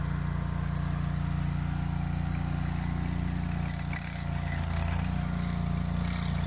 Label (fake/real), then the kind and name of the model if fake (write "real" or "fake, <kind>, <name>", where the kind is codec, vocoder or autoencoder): real